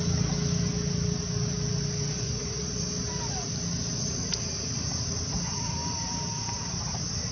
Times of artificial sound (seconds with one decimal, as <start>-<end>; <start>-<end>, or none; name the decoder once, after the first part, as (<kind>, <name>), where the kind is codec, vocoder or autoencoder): 2.1-2.6 (vocoder, Vocos)